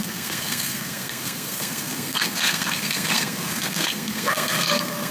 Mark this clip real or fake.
fake